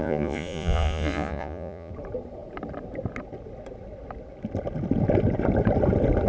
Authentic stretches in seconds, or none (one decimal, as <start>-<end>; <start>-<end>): 1.9-6.3